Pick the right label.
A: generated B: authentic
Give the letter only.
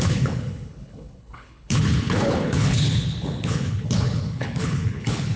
A